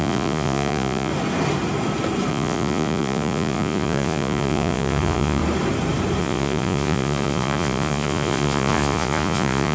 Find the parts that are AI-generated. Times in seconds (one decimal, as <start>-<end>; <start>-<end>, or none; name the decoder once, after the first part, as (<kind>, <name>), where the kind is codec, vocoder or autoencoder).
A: 0.0-1.1 (vocoder, Vocos); 2.3-5.4; 6.2-9.7